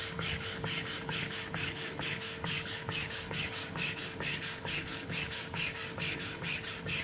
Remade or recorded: remade